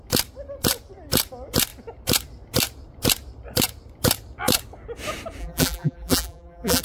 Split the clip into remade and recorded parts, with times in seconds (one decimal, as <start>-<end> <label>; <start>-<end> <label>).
0.0-5.4 recorded; 5.4-6.8 remade

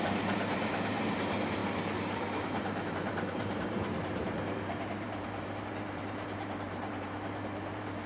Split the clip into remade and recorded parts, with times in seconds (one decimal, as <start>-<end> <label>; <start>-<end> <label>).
0.0-1.6 remade; 1.6-2.9 recorded; 2.9-8.1 remade

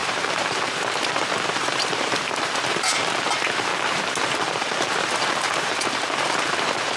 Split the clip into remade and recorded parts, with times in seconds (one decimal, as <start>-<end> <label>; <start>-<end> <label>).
0.0-3.7 remade; 3.7-4.2 recorded; 4.2-7.0 remade

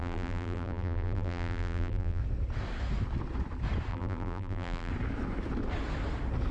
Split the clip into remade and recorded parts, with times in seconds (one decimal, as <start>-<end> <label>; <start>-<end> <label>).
0.0-2.2 remade; 2.2-3.9 recorded; 3.9-4.9 remade; 4.9-6.5 recorded